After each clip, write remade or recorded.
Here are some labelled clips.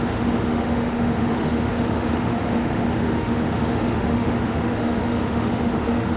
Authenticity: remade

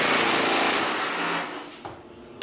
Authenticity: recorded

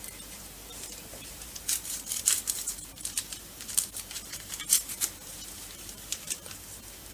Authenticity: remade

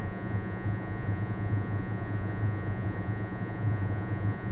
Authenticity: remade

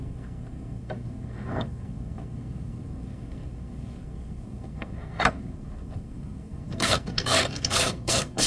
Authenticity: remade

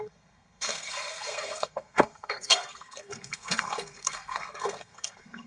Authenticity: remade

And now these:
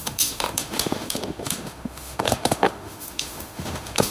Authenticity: remade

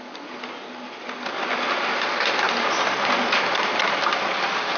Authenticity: recorded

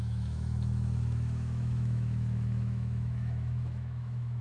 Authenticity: remade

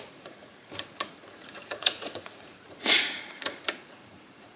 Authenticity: remade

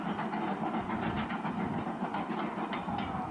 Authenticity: recorded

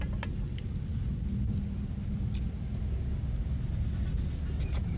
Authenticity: recorded